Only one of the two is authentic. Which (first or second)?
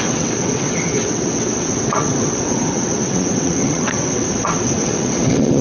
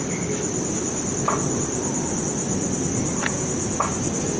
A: second